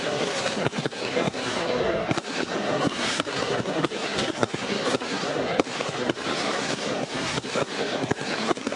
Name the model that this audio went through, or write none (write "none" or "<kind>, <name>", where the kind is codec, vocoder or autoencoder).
codec, SNAC